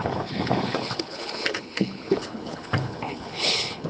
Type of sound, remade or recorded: remade